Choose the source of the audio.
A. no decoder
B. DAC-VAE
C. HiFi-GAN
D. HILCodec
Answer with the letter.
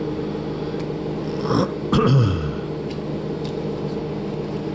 A